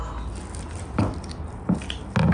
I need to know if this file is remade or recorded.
recorded